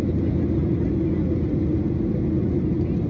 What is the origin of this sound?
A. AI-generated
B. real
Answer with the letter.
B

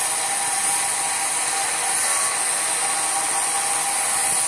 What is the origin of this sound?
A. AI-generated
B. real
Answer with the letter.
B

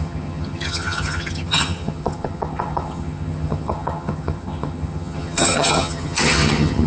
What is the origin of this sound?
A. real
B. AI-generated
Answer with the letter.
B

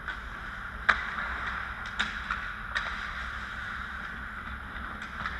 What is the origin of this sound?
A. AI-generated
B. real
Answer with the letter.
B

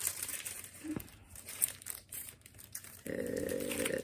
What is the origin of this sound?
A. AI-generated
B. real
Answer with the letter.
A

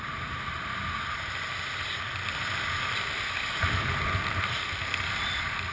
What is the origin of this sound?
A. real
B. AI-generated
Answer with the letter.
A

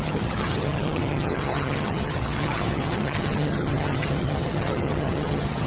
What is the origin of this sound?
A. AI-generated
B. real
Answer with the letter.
A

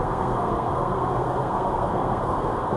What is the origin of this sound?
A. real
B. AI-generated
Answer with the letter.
B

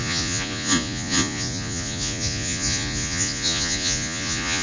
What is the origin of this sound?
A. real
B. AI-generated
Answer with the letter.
B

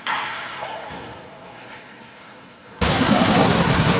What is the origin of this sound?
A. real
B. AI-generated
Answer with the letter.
B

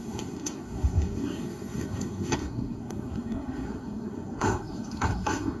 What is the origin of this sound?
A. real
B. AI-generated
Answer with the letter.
B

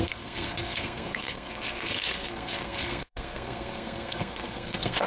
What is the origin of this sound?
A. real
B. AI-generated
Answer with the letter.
B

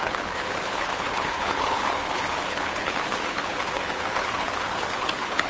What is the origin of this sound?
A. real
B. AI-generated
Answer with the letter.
B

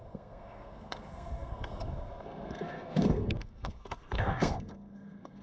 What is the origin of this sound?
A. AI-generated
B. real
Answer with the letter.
A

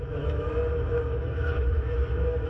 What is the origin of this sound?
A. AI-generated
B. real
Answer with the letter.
A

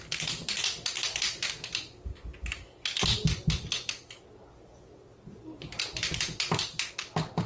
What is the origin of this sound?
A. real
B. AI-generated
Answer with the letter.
A